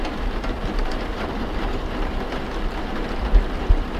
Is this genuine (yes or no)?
no